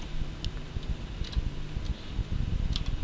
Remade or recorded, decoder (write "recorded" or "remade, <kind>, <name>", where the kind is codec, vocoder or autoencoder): recorded